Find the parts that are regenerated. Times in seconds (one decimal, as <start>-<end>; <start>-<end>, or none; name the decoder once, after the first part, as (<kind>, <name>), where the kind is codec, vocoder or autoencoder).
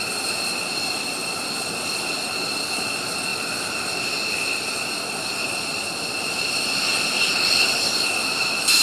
none